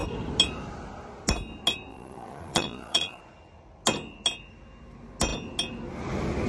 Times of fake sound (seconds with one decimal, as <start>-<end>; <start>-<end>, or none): 1.9-3.2